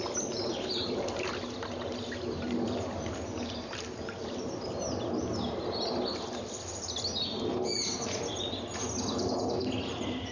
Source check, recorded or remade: recorded